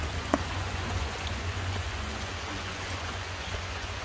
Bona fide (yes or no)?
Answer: no